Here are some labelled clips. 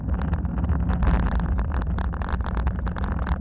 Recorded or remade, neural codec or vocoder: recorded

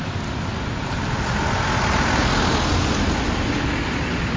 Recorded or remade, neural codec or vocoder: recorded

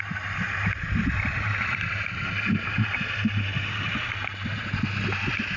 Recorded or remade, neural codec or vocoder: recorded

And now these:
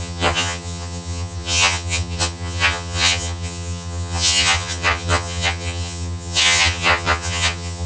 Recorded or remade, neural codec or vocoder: remade, vocoder, HiFi-GAN